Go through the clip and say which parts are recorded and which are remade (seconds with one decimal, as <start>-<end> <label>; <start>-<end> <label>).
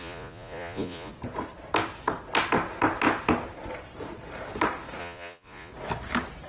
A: 0.0-1.1 remade; 1.1-5.0 recorded; 5.0-5.7 remade; 5.7-6.5 recorded